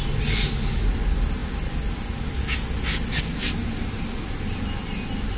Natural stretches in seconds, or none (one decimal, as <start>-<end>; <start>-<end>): 0.0-5.4

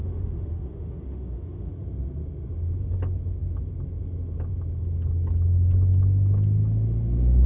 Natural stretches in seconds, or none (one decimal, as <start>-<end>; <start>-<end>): 1.7-7.5

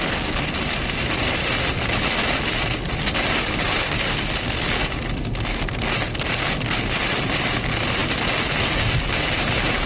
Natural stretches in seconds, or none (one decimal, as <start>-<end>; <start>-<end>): 0.0-9.9